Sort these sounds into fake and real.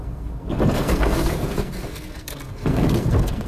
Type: fake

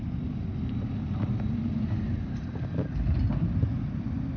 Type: real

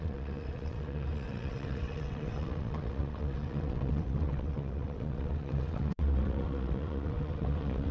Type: fake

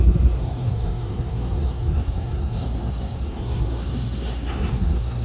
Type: fake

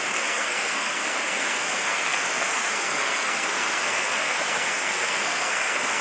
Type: fake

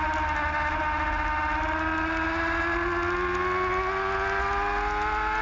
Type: real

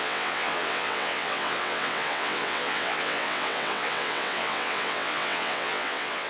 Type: fake